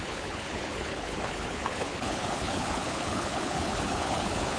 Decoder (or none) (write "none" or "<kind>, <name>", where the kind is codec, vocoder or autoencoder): codec, HILCodec